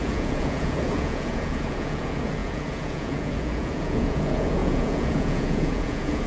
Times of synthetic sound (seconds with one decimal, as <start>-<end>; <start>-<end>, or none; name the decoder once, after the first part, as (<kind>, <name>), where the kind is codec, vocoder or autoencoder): 0.0-6.3 (vocoder, Vocos)

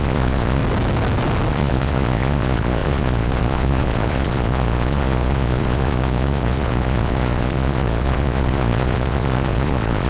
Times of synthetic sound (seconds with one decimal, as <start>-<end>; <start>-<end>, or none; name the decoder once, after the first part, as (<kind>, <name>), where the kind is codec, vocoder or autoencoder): 0.0-0.6 (vocoder, Vocos); 1.5-10.1

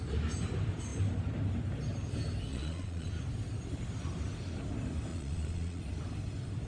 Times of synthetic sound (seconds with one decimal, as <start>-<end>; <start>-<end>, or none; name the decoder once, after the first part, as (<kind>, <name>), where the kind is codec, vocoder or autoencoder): 2.5-3.1 (vocoder, Vocos); 5.1-5.8

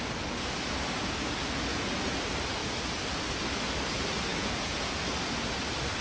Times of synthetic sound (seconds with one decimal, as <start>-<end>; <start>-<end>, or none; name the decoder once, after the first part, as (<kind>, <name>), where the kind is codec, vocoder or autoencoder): 1.7-2.2 (vocoder, Vocos); 4.3-4.9

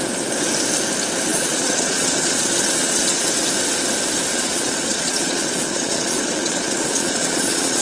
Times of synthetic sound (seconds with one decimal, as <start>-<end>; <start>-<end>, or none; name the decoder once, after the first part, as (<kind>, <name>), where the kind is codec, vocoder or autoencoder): 1.3-3.3 (vocoder, Vocos); 4.3-7.8

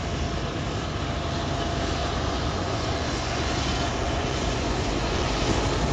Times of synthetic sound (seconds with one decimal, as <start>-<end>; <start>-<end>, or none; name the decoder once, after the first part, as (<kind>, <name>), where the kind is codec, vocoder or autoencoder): 2.0-5.5 (vocoder, Vocos)

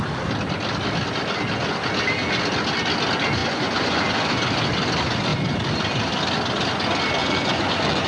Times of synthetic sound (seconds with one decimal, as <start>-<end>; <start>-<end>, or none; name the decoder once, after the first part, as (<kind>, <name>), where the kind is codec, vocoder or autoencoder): 3.4-4.3 (vocoder, Vocos); 7.2-8.1

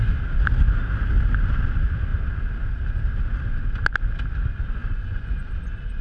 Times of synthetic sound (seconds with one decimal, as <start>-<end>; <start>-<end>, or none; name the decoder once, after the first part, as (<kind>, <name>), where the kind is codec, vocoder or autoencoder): 4.8-5.5 (vocoder, Vocos)